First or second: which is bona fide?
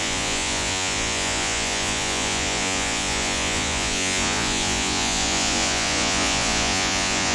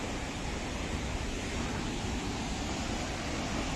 second